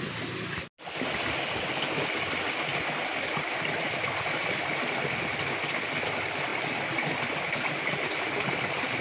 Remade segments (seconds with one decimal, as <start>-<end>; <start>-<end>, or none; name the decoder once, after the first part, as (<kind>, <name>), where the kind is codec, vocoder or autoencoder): none